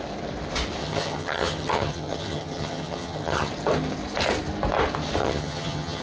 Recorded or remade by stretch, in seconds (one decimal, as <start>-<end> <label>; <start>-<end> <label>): 0.0-0.8 recorded; 0.8-3.5 remade; 3.5-5.2 recorded; 5.2-6.0 remade